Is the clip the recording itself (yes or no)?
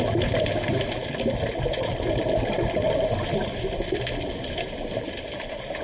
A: yes